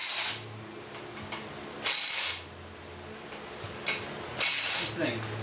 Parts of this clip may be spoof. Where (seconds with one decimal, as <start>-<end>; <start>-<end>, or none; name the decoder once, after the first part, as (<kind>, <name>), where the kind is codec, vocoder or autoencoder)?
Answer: none